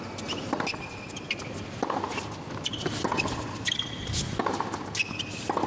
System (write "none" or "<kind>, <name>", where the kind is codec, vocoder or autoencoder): none